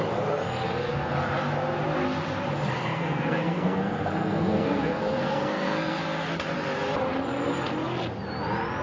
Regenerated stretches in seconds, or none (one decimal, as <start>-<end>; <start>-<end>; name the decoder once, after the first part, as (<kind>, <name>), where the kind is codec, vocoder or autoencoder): 2.8-6.0 (codec, SNAC)

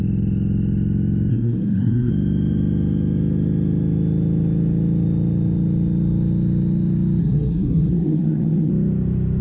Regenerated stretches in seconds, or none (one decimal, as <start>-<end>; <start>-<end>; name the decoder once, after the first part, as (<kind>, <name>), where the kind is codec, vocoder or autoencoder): 1.3-2.1 (codec, SNAC); 7.2-8.7

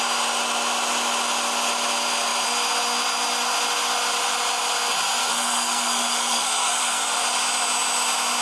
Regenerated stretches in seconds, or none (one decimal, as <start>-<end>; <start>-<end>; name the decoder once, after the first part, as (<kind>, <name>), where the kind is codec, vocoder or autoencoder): 5.2-7.2 (codec, SNAC)

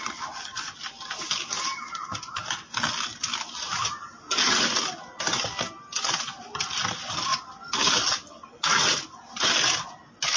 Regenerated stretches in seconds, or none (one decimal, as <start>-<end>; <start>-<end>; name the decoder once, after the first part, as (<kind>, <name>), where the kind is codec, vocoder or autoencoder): none

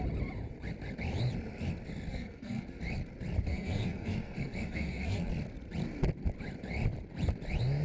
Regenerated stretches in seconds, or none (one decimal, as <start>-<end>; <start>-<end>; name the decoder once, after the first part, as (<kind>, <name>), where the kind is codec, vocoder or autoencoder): 2.1-2.8 (codec, SNAC); 3.5-5.3

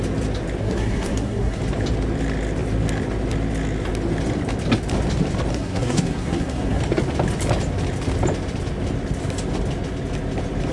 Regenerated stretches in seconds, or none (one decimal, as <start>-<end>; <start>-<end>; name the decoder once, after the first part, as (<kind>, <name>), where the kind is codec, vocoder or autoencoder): 0.6-1.6 (codec, SNAC); 5.5-6.8